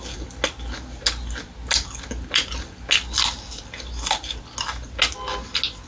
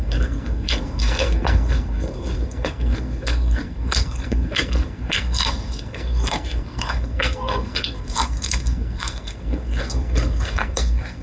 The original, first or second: first